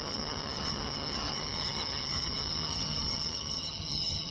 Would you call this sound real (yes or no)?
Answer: no